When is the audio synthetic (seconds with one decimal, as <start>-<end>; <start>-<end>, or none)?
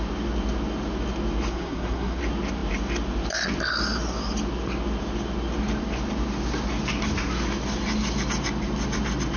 1.5-2.2